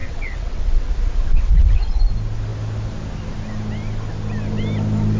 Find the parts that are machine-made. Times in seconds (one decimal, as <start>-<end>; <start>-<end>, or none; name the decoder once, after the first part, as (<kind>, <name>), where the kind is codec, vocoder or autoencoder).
0.0-0.9 (vocoder, WaveNeXt); 1.3-2.0